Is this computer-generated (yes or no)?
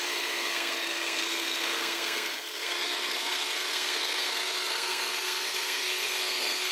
yes